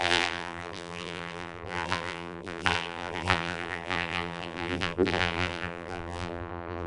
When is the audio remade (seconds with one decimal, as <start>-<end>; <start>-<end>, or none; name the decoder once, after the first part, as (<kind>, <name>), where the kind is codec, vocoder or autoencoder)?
0.0-6.9 (vocoder, BigVGAN v2)